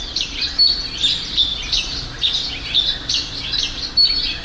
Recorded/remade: recorded